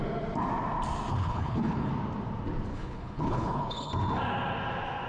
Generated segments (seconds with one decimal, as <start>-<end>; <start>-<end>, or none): 1.1-1.9; 2.7-3.9